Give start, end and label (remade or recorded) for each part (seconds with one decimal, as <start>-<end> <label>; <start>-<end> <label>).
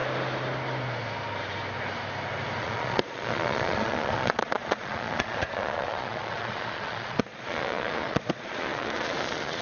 0.0-2.6 recorded; 2.6-9.6 remade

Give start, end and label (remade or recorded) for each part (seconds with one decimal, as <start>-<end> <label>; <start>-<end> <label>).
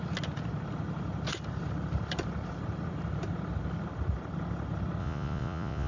0.0-5.0 recorded; 5.0-5.9 remade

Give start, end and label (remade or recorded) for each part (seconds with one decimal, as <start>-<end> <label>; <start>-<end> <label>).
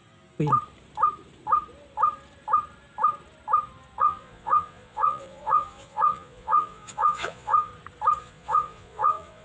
0.0-4.0 recorded; 4.0-7.7 remade; 7.7-8.2 recorded; 8.2-9.4 remade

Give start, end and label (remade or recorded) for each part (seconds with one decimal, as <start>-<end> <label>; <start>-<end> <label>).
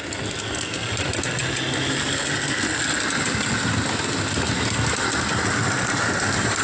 0.0-6.6 recorded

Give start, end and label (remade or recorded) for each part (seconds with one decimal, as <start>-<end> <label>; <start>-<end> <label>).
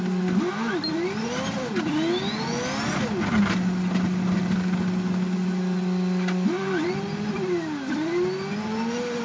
0.0-9.2 recorded